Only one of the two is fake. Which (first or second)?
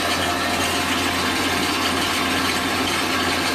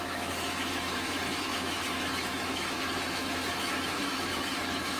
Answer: second